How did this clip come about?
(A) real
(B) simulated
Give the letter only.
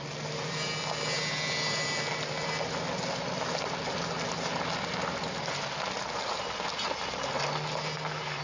A